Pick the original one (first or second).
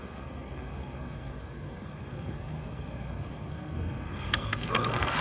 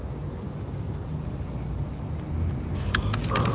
second